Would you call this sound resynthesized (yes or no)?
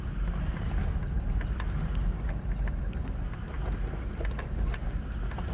no